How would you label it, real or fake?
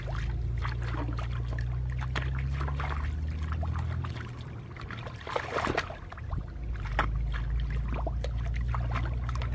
real